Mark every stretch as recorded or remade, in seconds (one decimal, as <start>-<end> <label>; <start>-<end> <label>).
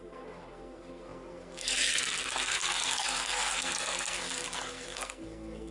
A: 0.0-5.7 remade